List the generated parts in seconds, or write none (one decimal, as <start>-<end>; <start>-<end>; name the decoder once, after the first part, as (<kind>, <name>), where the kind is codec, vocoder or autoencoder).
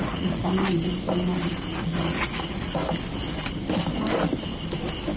0.0-0.4 (vocoder, Vocos); 1.7-2.8